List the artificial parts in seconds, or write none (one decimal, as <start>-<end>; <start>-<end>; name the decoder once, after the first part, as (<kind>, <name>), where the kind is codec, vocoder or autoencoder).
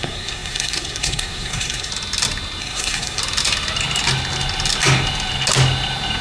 0.0-1.9 (codec, SNAC); 2.6-3.2